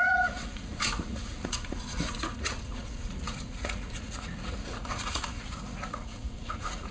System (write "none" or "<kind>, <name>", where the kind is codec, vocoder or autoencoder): vocoder, Vocos